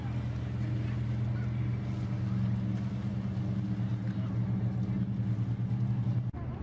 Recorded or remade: recorded